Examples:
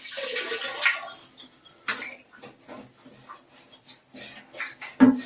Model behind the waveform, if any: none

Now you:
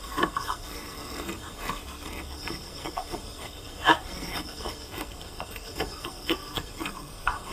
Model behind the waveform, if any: codec, SNAC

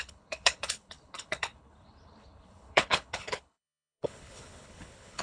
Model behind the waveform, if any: codec, HILCodec